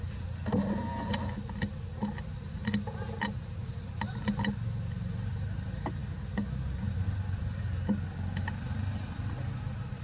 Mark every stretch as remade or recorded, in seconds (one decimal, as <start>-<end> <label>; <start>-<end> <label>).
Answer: 0.0-10.0 recorded